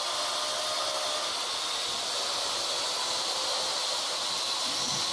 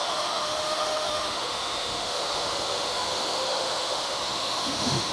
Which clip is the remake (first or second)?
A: second